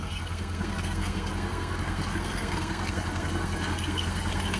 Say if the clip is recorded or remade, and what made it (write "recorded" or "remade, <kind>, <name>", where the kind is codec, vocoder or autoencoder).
remade, codec, SNAC